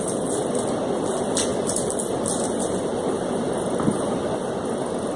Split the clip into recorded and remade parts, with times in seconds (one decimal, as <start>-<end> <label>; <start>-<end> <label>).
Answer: 0.0-5.2 recorded